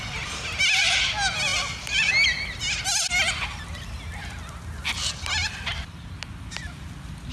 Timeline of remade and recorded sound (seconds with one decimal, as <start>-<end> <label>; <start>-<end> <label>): 0.0-1.5 recorded; 1.5-2.1 remade; 2.1-7.3 recorded